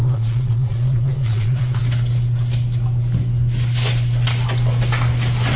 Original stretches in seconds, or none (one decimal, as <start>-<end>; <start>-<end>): 1.8-5.6